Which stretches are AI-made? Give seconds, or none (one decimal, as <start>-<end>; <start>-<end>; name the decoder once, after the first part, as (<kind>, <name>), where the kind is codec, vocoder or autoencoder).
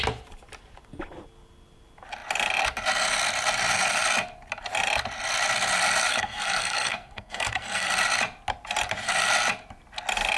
6.1-7.9 (codec, SNAC)